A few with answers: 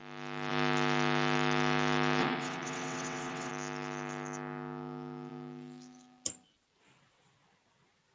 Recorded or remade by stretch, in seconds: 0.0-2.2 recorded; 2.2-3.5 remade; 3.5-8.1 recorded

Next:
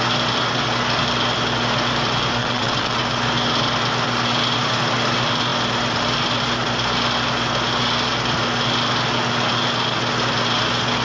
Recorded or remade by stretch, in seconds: 0.0-2.4 recorded; 2.4-3.0 remade; 3.0-11.0 recorded

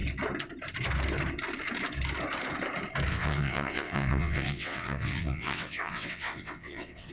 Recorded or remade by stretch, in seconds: 0.0-3.1 recorded; 3.1-7.1 remade

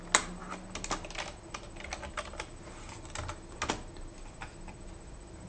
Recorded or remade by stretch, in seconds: 0.0-5.5 recorded

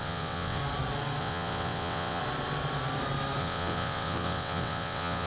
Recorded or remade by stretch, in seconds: 0.0-0.6 remade; 0.6-1.2 recorded; 1.2-2.2 remade; 2.2-3.4 recorded; 3.4-5.3 remade

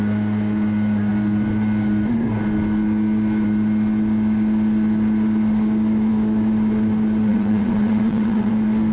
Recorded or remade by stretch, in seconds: 0.0-7.3 recorded; 7.3-8.5 remade; 8.5-8.9 recorded